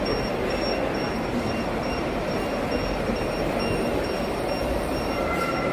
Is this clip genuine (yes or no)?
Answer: no